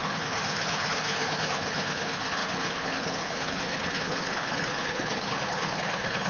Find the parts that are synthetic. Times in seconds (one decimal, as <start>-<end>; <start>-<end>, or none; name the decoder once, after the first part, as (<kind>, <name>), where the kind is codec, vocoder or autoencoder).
0.0-6.3 (codec, HILCodec)